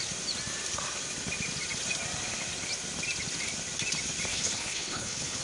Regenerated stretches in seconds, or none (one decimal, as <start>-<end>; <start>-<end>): 4.3-5.4